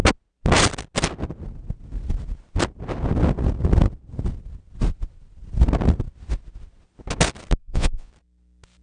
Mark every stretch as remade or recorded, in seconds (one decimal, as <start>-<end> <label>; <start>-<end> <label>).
0.0-7.6 recorded; 7.6-8.1 remade; 8.1-8.8 recorded